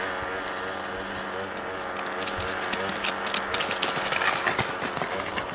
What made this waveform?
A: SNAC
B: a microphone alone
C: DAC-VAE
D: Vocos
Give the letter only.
B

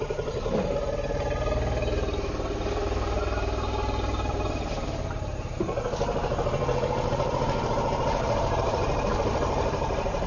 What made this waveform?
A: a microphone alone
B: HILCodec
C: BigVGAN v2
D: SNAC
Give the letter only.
C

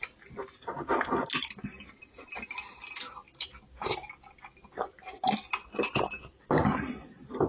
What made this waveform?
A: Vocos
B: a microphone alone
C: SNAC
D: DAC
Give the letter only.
B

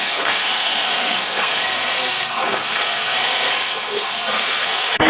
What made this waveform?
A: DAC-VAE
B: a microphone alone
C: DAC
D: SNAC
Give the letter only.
D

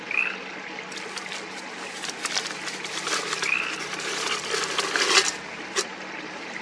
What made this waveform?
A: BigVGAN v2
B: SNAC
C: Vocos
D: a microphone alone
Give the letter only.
D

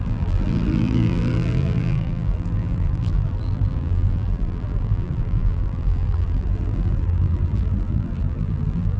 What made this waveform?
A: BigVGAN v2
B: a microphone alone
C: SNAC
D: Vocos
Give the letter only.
A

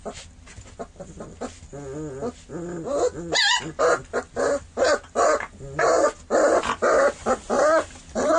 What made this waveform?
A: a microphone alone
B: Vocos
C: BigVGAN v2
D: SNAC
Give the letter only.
A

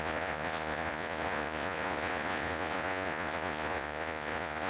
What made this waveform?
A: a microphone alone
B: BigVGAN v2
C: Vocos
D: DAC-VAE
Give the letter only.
C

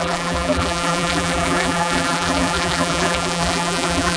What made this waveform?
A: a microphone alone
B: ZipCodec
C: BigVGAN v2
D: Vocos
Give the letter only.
C